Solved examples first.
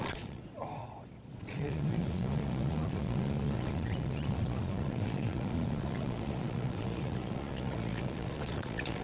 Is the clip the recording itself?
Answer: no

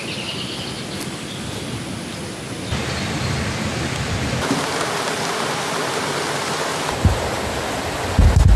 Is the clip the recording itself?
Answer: yes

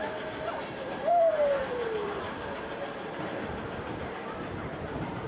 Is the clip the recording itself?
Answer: no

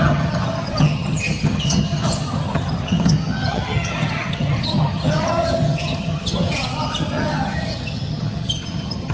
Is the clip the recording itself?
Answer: no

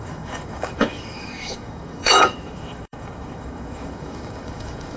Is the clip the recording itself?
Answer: no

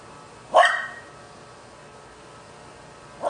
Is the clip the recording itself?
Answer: yes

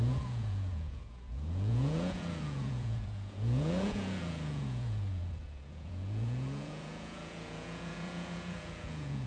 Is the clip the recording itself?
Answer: no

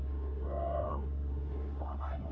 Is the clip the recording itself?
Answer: no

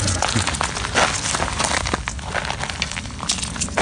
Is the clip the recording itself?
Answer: yes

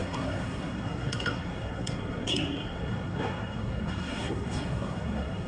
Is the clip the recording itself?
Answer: no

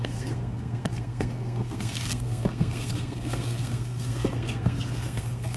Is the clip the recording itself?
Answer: no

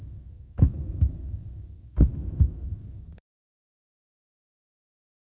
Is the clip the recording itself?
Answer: no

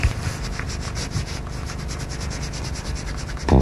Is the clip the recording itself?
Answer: yes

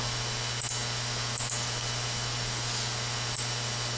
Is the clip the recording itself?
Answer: yes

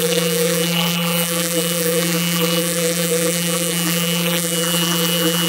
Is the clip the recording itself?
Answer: no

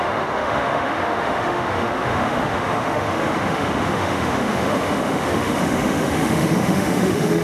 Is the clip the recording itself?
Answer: no